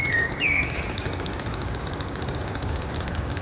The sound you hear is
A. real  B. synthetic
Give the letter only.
B